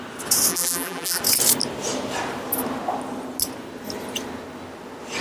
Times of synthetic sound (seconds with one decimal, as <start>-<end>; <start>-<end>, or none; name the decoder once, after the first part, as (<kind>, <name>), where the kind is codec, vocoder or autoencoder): 0.5-1.2 (vocoder, BigVGAN v2)